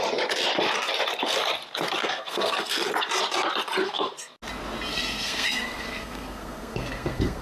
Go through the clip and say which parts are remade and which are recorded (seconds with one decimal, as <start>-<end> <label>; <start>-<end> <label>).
0.0-2.0 recorded; 2.0-2.9 remade; 2.9-3.8 recorded; 3.8-4.3 remade; 4.3-4.9 recorded; 4.9-7.4 remade